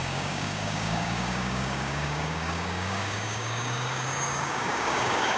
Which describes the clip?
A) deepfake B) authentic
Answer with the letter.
A